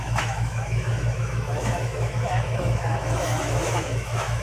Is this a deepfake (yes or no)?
yes